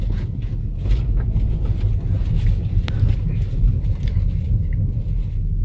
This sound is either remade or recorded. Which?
recorded